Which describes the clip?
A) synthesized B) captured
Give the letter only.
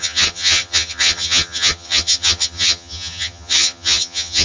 A